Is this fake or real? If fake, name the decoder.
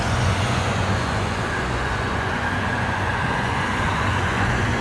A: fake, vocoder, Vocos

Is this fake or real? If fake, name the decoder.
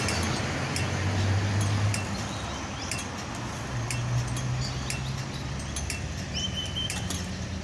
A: real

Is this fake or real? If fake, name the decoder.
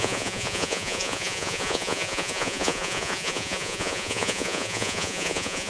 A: fake, vocoder, Vocos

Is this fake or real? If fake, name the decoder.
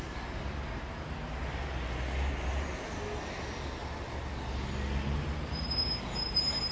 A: real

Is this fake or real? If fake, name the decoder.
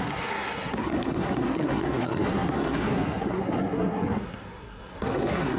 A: fake, codec, SNAC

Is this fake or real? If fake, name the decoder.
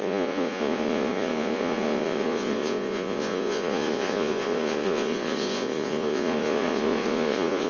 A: fake, vocoder, Vocos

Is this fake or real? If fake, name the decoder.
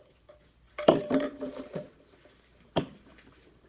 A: real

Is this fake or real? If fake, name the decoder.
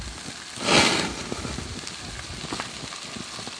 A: real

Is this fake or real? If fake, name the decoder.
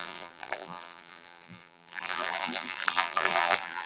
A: fake, vocoder, BigVGAN v2